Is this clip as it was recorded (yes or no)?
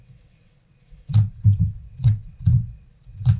no